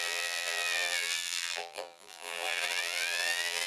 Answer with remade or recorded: remade